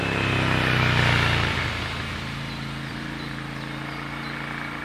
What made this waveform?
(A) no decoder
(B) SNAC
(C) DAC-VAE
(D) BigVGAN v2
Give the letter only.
A